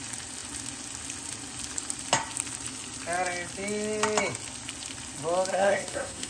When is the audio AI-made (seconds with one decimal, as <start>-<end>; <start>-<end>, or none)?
5.5-6.3